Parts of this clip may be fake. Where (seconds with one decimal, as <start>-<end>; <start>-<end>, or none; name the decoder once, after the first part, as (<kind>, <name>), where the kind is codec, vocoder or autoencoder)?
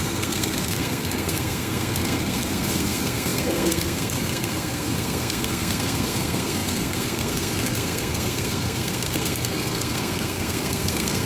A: 0.0-11.3 (codec, SNAC)